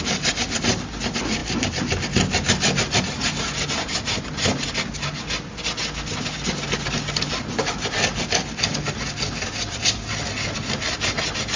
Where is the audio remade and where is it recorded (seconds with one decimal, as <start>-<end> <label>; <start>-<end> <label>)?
0.0-11.6 recorded